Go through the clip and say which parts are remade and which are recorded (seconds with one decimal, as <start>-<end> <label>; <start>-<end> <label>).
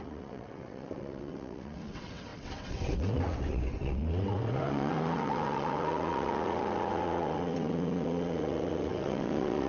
0.0-9.7 remade